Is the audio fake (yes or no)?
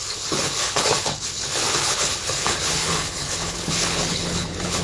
yes